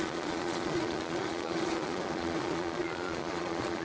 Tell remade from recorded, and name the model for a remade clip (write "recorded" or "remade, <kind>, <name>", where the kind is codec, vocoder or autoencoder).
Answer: remade, vocoder, Vocos